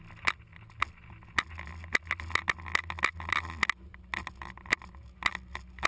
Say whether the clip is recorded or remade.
recorded